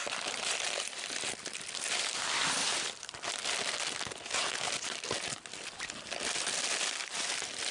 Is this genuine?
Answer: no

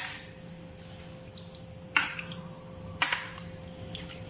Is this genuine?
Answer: yes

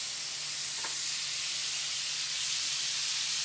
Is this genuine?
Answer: yes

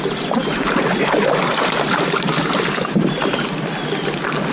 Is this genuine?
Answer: yes